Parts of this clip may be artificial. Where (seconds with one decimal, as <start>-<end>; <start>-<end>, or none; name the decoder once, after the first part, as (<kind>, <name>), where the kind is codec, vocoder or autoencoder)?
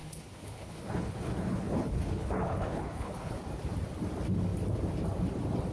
0.0-3.4 (codec, HILCodec)